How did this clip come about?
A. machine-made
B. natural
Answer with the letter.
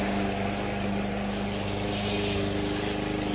B